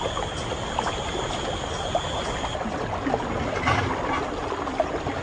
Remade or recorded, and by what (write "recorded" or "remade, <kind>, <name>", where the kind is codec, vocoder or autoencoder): recorded